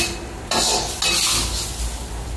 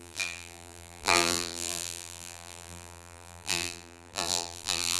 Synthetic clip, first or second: second